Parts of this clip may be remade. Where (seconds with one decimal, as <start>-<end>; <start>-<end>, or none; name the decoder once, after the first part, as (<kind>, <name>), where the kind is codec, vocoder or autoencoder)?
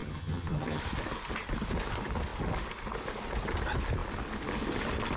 0.0-0.8 (vocoder, HiFi-GAN)